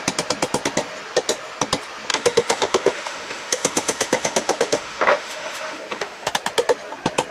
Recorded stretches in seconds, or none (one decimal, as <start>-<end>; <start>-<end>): 0.0-2.1; 6.3-7.3

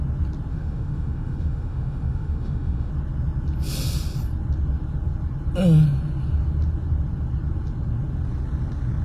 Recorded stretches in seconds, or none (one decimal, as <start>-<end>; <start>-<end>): 0.0-0.5; 2.9-9.0

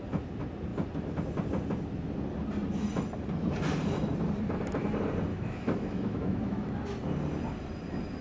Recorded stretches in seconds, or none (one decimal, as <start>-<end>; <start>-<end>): 0.0-5.3; 6.7-8.2

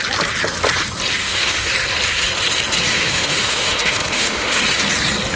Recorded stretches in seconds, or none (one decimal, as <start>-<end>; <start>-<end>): 0.0-1.2; 1.7-2.9; 4.6-5.4